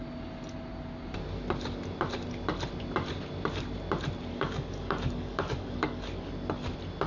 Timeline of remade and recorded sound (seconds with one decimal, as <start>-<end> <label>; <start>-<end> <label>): 0.0-4.3 recorded; 4.3-6.3 remade; 6.3-7.1 recorded